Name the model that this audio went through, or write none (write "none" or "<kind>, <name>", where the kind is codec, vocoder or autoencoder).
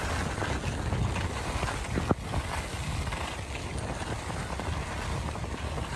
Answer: none